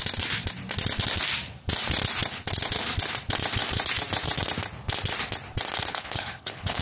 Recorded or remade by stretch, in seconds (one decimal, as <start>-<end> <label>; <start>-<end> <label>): 0.0-5.9 recorded; 5.9-6.8 remade